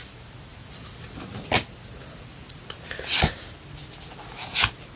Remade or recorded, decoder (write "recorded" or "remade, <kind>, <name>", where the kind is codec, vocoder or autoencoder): recorded